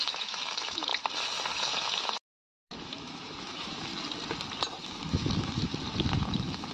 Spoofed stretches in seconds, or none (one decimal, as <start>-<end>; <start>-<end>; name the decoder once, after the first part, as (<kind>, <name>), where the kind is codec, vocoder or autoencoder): 0.0-0.9 (autoencoder, DAC-VAE); 1.6-3.9; 4.8-5.7; 6.2-6.7